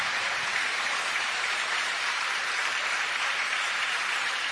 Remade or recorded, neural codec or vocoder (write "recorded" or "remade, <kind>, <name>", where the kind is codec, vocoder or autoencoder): remade, vocoder, BigVGAN v2